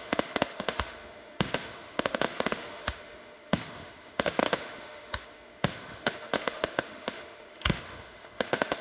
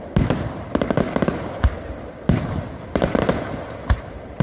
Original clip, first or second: second